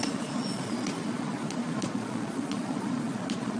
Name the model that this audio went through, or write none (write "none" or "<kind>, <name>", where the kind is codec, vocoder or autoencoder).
vocoder, Vocos